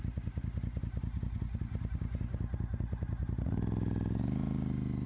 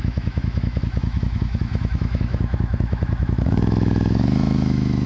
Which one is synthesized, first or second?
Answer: second